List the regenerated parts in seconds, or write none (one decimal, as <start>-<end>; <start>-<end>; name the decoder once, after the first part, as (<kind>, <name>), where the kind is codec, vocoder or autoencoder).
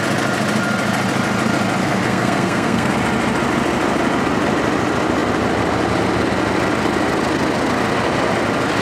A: 1.8-2.9 (codec, SNAC)